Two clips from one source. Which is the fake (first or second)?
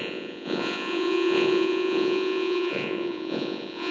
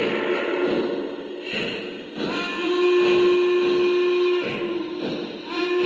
first